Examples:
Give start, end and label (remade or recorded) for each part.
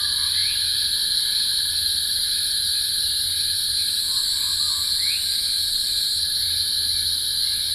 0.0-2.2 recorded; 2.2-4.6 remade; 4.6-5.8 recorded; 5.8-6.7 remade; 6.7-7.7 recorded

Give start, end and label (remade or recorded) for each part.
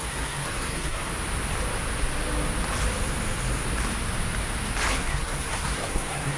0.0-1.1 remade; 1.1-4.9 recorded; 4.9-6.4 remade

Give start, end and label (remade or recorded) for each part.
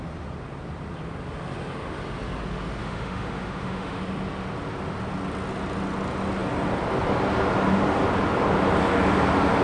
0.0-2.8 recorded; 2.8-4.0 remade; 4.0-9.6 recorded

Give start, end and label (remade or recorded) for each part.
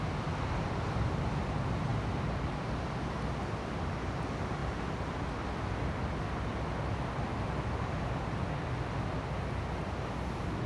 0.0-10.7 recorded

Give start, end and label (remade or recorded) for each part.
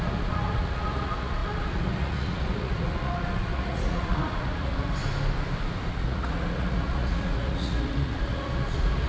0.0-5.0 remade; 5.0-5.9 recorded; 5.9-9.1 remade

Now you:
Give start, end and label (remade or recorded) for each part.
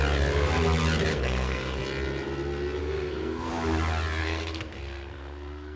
0.0-1.1 recorded; 1.1-1.8 remade; 1.8-2.8 recorded; 2.8-3.5 remade; 3.5-4.2 recorded; 4.2-5.8 remade